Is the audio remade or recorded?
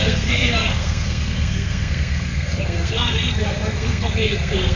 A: remade